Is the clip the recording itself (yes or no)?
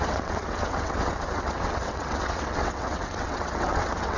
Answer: no